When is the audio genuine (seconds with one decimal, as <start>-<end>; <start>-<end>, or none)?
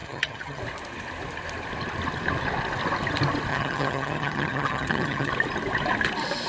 0.6-3.5; 5.3-6.5